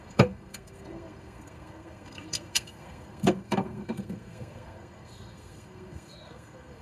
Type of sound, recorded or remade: remade